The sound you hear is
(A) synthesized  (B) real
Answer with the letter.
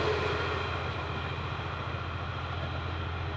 B